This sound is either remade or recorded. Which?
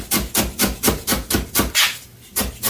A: recorded